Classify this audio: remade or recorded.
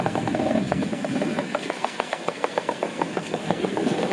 remade